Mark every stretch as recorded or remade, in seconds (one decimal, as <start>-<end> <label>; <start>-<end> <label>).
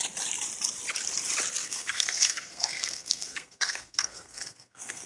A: 0.0-1.6 recorded; 1.6-5.1 remade